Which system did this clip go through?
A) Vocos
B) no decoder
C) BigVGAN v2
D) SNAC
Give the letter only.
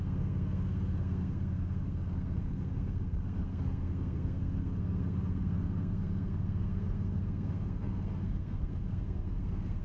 D